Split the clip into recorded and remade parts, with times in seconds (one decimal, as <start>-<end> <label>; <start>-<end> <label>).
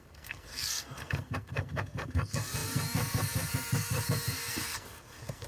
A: 0.0-5.5 remade